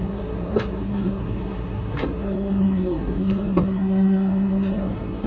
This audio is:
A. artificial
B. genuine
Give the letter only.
A